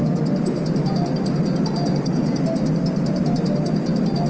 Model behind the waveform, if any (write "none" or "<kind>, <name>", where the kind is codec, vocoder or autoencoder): none